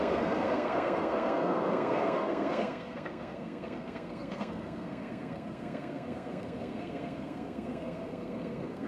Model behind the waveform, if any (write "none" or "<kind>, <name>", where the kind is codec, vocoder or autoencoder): codec, SNAC